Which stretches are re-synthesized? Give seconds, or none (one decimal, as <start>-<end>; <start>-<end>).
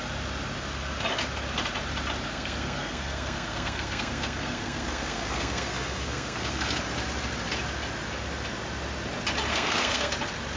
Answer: 2.3-6.8; 9.5-10.1